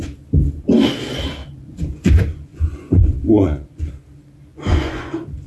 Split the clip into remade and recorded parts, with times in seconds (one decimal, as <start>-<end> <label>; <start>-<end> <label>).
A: 0.0-1.4 recorded; 1.4-3.9 remade; 3.9-4.5 recorded; 4.5-5.5 remade